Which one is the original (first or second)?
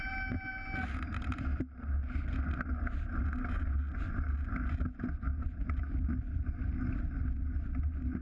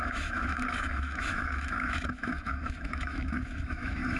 first